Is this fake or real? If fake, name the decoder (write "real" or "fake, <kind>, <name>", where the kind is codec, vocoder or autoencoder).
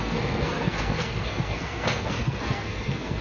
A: fake, codec, SNAC